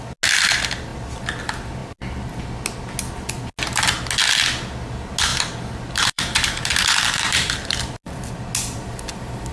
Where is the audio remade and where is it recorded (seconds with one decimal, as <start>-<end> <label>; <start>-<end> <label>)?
0.0-5.3 recorded; 5.3-7.8 remade; 7.8-9.5 recorded